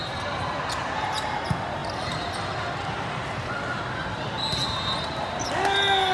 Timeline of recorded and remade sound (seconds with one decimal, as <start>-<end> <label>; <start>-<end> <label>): 0.0-6.1 recorded